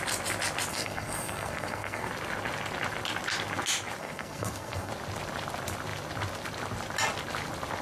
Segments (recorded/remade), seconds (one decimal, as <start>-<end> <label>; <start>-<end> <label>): 0.0-0.7 recorded; 0.7-2.1 remade; 2.1-4.0 recorded; 4.0-4.9 remade; 4.9-7.8 recorded